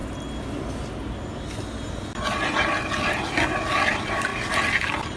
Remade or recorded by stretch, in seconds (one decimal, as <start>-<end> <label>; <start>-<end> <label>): 0.0-5.2 recorded